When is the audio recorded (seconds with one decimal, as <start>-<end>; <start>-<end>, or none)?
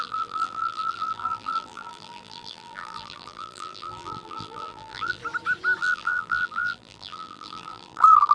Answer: 5.2-5.8